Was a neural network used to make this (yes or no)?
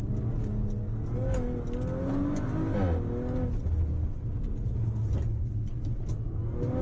no